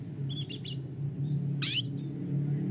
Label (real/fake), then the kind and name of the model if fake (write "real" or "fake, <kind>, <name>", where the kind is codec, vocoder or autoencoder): real